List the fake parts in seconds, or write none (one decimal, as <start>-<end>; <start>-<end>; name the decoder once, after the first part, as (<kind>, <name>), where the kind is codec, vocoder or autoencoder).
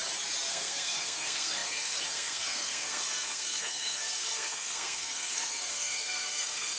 0.5-6.8 (codec, SNAC)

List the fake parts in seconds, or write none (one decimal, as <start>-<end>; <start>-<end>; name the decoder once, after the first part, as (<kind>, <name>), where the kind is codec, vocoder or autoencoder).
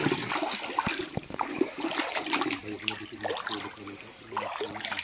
none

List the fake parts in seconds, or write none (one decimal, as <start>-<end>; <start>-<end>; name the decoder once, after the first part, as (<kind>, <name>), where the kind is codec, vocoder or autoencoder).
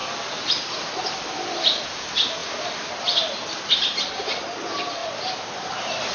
none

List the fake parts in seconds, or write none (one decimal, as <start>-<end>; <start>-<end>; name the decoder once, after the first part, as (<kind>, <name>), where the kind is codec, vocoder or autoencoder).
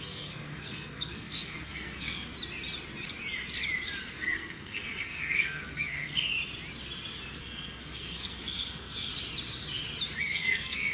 0.0-2.3 (codec, SNAC); 4.1-6.3; 7.4-9.1; 10.2-10.9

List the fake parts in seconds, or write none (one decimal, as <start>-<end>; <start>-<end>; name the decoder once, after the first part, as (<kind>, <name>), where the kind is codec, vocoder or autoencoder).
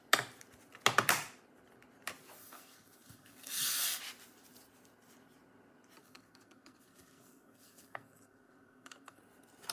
2.4-4.0 (codec, SNAC); 6.0-9.2